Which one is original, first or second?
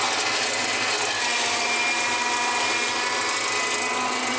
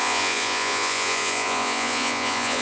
first